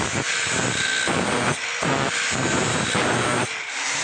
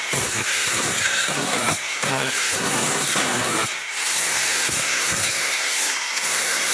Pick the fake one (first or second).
second